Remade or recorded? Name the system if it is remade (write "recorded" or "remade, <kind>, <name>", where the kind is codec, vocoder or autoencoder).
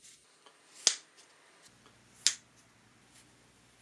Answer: recorded